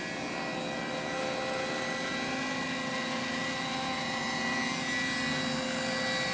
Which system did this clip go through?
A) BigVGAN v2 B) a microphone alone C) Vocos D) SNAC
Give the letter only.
B